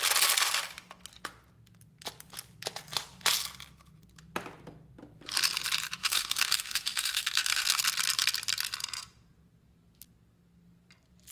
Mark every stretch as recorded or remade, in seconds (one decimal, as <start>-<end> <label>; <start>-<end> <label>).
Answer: 0.0-6.0 recorded; 6.0-7.8 remade; 7.8-11.3 recorded